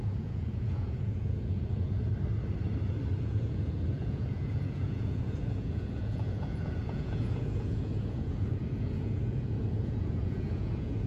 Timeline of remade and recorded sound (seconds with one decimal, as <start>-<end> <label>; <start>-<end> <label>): 0.0-2.1 remade; 2.1-3.2 recorded; 3.2-11.1 remade